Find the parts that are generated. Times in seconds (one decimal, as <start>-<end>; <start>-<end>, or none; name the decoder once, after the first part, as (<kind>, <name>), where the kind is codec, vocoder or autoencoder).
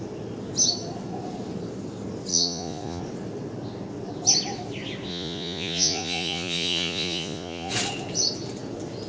2.3-3.0 (vocoder, Vocos); 5.1-7.7